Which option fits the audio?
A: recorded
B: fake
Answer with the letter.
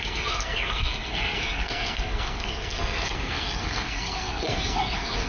B